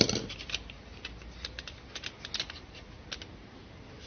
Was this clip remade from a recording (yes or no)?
no